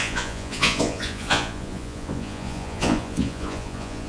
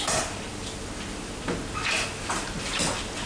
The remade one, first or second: first